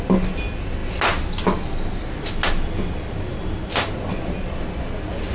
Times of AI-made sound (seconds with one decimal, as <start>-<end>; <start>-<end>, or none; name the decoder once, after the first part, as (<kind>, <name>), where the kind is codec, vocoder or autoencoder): none